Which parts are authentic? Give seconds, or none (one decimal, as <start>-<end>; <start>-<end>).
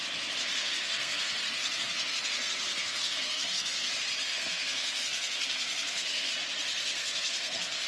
0.0-0.5; 3.9-4.3; 6.3-6.8